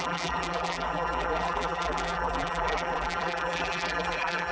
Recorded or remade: remade